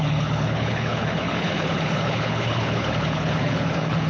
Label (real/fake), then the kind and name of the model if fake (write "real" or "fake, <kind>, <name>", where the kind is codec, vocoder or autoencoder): fake, codec, HILCodec